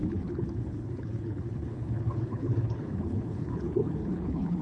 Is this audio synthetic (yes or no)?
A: yes